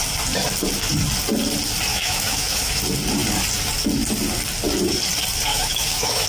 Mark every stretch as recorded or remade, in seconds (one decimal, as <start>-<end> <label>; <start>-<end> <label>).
0.0-1.9 recorded; 1.9-2.8 remade; 2.8-5.5 recorded; 5.5-6.3 remade